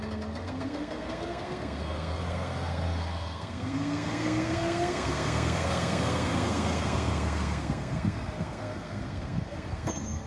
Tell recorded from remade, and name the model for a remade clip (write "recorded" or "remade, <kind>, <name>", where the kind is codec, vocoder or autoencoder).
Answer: remade, codec, SNAC